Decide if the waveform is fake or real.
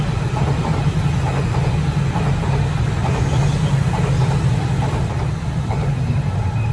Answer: real